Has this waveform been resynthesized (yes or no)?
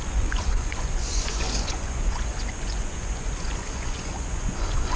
yes